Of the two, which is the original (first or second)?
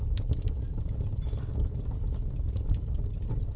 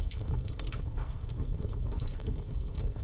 first